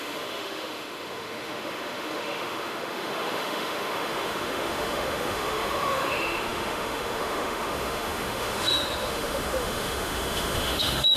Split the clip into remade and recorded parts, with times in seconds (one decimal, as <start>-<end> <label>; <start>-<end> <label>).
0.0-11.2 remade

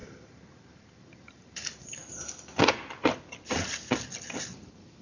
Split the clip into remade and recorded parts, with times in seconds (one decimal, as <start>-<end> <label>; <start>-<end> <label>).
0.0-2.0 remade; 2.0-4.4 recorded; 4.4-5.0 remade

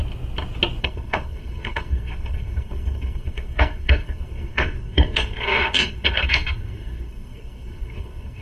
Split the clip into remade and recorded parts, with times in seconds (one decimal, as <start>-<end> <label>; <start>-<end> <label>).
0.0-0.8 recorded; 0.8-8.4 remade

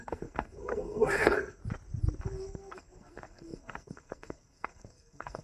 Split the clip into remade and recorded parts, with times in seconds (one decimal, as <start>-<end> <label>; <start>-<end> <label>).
0.0-1.6 remade; 1.6-2.2 recorded; 2.2-5.4 remade

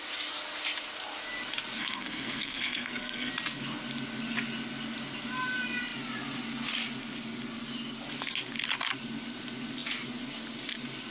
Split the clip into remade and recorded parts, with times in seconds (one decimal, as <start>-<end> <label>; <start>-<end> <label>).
0.0-1.8 recorded; 1.8-3.3 remade; 3.3-11.1 recorded

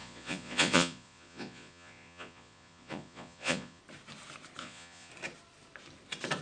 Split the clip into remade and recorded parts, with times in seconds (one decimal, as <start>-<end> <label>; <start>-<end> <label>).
0.0-3.8 remade; 3.8-4.6 recorded; 4.6-5.1 remade; 5.1-6.4 recorded